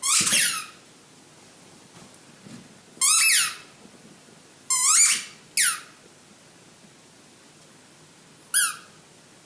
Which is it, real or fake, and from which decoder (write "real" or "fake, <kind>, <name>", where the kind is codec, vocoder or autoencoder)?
real